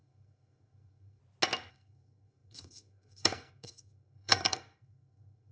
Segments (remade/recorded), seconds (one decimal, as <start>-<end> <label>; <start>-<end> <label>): 0.0-1.2 remade; 1.2-1.7 recorded; 1.7-5.5 remade